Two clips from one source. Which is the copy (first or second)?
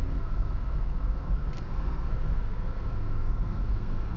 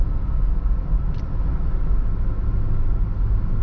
first